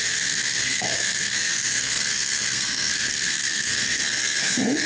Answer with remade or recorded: remade